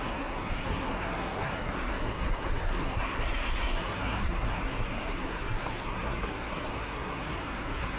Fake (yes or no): yes